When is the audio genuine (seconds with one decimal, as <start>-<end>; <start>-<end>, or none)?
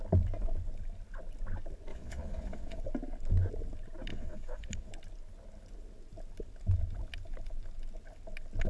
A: 0.0-1.9; 2.8-4.1; 4.9-8.7